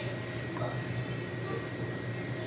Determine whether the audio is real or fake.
real